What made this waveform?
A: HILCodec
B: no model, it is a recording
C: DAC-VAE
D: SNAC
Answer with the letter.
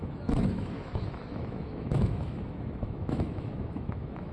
C